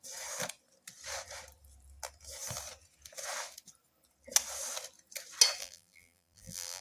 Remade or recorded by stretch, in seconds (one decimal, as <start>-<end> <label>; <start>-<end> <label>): 0.0-5.6 recorded; 5.6-6.8 remade